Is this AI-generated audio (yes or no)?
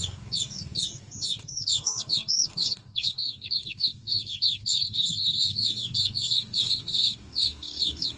yes